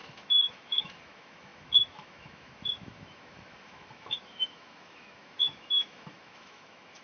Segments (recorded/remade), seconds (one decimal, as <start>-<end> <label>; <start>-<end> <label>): 0.0-7.0 remade